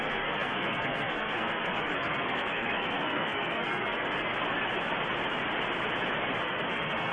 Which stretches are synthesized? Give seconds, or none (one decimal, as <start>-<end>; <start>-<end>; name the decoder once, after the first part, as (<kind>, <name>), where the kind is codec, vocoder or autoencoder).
0.0-4.3 (codec, SNAC); 6.4-7.1